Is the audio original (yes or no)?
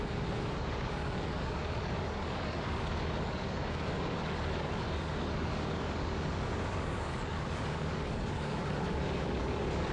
no